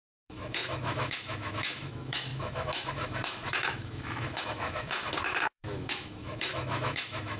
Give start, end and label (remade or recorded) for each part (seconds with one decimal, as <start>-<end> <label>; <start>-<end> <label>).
0.0-7.4 remade

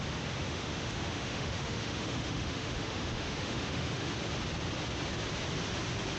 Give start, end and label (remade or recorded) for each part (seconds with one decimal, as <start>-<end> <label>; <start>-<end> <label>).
0.0-0.4 recorded; 0.4-4.1 remade; 4.1-6.2 recorded